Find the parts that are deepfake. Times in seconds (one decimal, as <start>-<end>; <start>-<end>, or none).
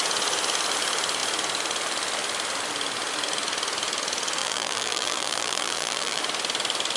4.4-6.2